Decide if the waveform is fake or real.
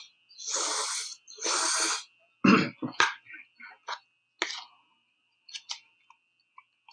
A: real